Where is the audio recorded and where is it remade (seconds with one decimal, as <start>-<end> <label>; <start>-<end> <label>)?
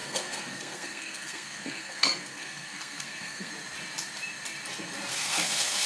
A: 0.0-3.5 remade; 3.5-5.1 recorded; 5.1-5.9 remade